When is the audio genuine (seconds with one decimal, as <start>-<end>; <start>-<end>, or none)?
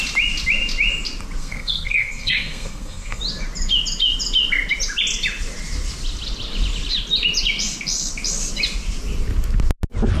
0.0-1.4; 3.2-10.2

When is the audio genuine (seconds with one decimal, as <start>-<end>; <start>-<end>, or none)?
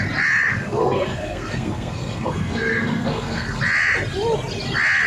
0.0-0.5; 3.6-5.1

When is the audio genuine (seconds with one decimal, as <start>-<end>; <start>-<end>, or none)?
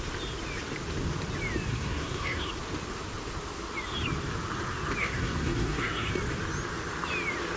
0.0-1.7; 2.5-5.0; 6.1-7.6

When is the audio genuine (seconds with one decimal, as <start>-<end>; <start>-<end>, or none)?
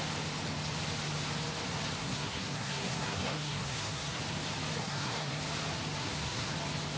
0.0-2.0; 4.2-4.8; 5.4-6.0; 6.5-7.0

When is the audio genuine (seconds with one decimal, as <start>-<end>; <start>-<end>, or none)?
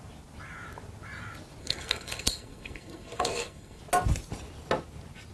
0.0-1.6; 3.8-5.3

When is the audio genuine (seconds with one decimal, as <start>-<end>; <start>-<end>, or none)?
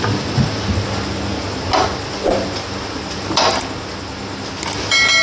0.0-5.2